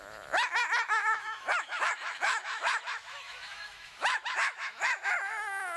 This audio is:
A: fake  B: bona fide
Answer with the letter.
A